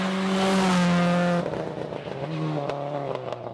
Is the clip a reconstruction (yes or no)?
no